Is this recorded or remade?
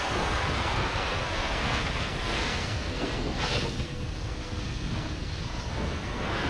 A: remade